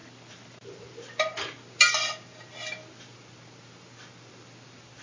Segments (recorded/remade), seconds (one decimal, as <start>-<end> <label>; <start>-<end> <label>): 0.0-5.0 recorded